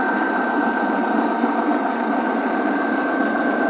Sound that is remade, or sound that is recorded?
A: remade